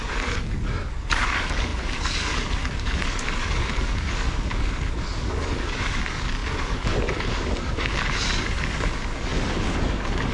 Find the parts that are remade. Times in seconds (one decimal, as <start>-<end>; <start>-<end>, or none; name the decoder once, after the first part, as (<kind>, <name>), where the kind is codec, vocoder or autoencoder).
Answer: 0.0-10.3 (codec, DAC)